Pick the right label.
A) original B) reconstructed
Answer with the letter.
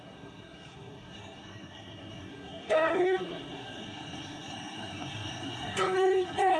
B